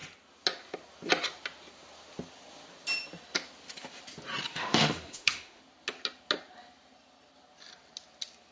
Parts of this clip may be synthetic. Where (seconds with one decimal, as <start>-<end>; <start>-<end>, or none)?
4.5-5.6